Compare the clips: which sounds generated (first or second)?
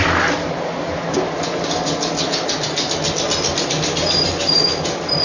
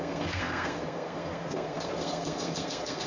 second